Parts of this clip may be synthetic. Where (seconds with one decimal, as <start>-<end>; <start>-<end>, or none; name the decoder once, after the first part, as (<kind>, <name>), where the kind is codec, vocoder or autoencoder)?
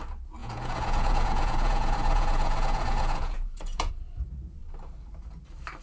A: 0.4-3.9 (vocoder, Vocos)